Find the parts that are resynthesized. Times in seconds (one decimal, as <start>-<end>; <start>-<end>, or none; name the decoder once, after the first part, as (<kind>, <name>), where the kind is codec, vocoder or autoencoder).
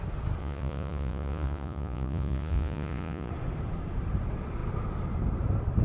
0.4-3.3 (vocoder, Vocos)